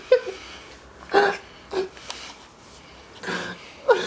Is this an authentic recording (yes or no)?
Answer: yes